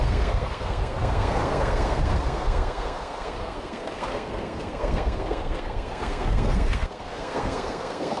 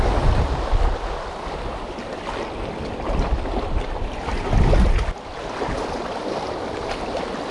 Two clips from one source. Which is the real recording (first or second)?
second